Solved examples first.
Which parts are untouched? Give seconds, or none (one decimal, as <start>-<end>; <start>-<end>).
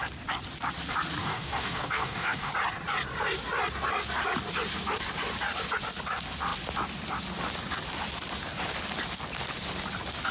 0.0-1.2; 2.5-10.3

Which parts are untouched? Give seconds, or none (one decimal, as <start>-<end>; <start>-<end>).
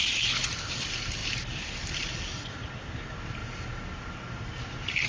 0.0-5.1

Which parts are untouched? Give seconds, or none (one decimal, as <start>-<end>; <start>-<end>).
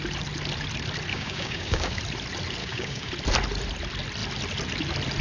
0.0-1.1; 2.0-2.6; 3.1-5.2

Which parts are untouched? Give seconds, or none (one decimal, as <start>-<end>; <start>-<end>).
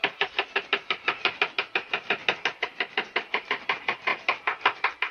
0.0-5.1